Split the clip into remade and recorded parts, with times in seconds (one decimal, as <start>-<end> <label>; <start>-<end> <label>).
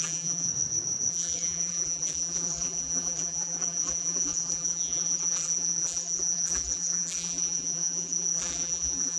0.0-0.5 remade; 0.5-1.1 recorded; 1.1-9.2 remade